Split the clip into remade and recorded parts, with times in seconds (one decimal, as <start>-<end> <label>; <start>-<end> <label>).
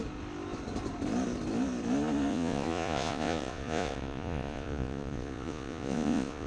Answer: 0.0-2.3 recorded; 2.3-6.5 remade